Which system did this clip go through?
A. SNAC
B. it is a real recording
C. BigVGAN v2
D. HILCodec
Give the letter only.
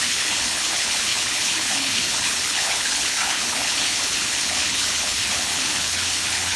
D